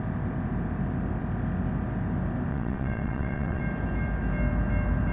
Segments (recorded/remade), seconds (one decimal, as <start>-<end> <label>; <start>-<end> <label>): 0.0-2.5 recorded; 2.5-3.6 remade; 3.6-5.1 recorded

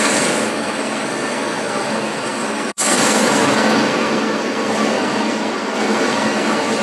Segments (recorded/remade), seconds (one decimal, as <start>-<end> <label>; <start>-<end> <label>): 0.0-6.8 remade

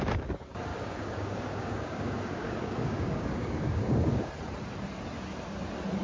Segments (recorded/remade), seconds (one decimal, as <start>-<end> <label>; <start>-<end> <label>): 0.0-0.7 recorded; 0.7-4.3 remade; 4.3-6.0 recorded

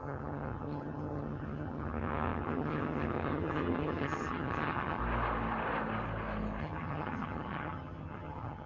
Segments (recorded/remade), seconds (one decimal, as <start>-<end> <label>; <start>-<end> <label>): 0.0-5.0 remade; 5.0-6.6 recorded; 6.6-8.7 remade

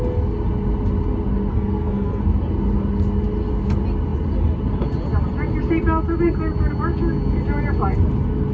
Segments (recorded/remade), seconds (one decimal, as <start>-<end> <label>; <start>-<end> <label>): 0.0-1.5 recorded; 1.5-2.2 remade; 2.2-8.5 recorded

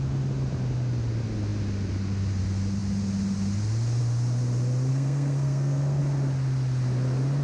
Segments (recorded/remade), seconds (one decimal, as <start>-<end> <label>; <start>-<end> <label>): 0.0-4.9 recorded; 4.9-6.0 remade; 6.0-7.4 recorded

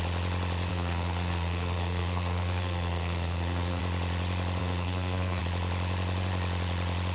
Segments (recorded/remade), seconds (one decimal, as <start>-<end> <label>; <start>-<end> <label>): 0.0-0.7 recorded; 0.7-3.8 remade; 3.8-4.6 recorded; 4.6-5.4 remade; 5.4-7.1 recorded

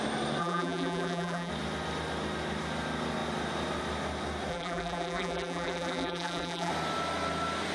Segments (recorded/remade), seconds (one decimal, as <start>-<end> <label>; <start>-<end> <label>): 0.0-0.4 recorded; 0.4-1.5 remade; 1.5-4.5 recorded; 4.5-6.7 remade; 6.7-7.7 recorded